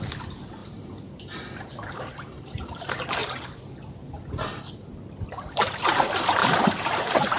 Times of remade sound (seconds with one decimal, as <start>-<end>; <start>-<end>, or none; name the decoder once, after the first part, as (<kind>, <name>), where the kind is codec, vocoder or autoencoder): 0.6-2.7 (vocoder, BigVGAN v2); 3.2-4.2; 6.4-7.4